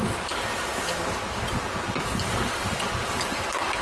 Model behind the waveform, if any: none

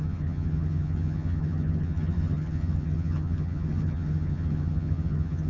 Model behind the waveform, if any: vocoder, HiFi-GAN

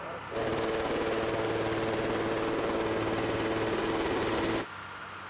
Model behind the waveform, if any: none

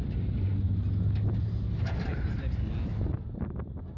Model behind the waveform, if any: none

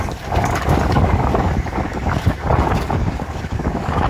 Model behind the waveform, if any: codec, DAC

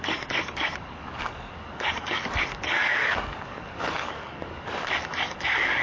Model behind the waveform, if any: codec, DAC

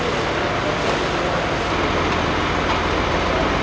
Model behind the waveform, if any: none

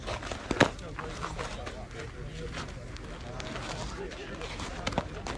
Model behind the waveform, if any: none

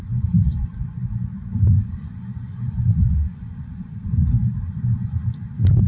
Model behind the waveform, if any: vocoder, Vocos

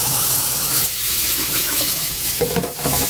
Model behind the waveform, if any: autoencoder, DAC-VAE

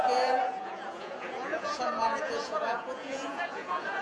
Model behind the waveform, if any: vocoder, Vocos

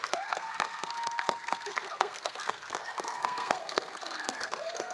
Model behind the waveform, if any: codec, SNAC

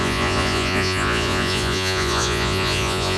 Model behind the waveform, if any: vocoder, Vocos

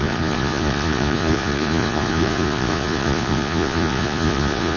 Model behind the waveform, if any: vocoder, Vocos